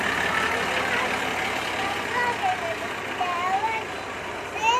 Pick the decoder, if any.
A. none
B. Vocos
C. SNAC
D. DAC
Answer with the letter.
A